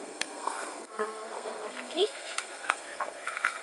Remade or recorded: remade